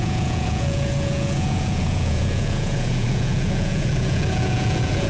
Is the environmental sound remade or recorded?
remade